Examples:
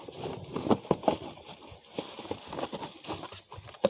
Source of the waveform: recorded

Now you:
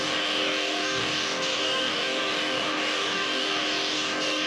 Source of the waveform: remade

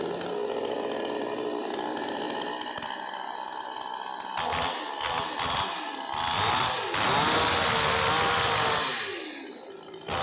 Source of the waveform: recorded